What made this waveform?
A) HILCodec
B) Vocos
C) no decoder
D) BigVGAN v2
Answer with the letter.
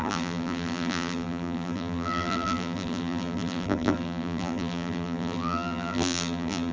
D